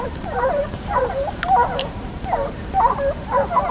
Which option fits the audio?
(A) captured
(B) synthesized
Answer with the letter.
B